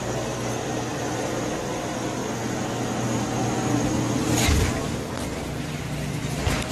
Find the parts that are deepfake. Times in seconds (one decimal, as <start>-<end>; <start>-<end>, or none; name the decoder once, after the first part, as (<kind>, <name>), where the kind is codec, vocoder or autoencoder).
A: none